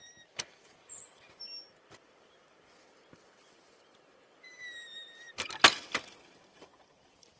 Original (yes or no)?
no